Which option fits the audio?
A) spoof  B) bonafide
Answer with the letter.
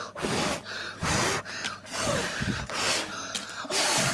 B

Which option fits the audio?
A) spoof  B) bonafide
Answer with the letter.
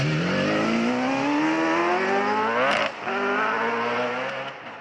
B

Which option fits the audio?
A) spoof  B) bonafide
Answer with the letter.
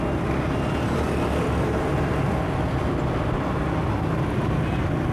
B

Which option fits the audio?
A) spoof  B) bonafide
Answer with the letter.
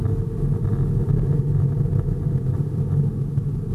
B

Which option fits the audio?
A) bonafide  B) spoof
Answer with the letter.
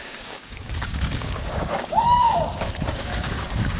B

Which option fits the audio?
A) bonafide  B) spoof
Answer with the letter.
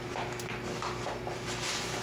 A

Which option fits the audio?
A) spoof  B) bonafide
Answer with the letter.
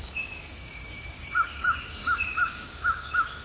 A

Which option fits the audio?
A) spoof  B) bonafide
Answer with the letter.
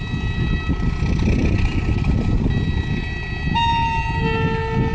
B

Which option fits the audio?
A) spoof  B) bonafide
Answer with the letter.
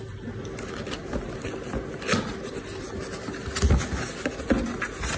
B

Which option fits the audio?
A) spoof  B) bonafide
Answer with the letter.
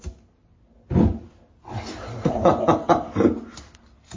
B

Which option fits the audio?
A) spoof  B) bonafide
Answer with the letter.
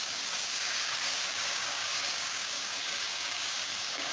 A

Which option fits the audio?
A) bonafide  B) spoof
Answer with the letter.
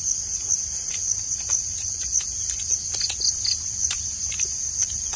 A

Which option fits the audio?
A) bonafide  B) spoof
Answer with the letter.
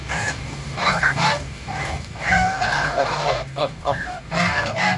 B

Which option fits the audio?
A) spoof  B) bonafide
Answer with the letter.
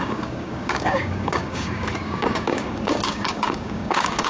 A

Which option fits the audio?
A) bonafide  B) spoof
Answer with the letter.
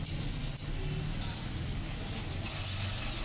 A